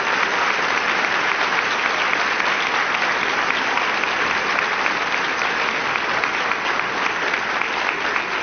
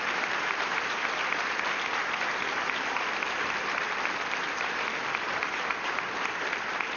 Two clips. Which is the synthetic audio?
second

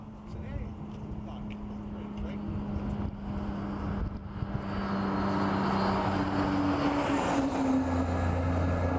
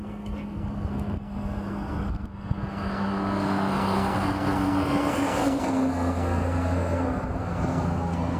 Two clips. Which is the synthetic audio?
second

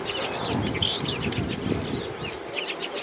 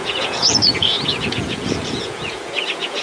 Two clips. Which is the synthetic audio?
second